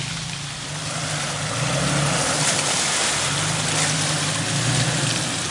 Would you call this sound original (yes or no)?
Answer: yes